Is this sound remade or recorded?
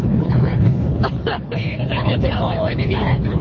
remade